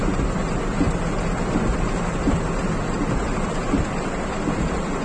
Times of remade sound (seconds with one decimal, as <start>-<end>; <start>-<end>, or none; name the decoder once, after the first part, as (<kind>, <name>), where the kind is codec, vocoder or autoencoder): none